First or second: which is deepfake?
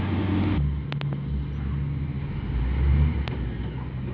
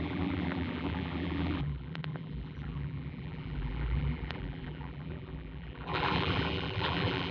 second